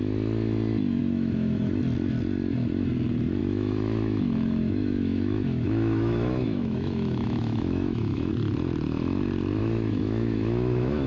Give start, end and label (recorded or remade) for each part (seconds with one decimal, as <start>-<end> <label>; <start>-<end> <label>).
0.0-1.0 recorded; 1.0-1.8 remade; 1.8-3.4 recorded; 3.4-8.3 remade; 8.3-9.6 recorded; 9.6-11.1 remade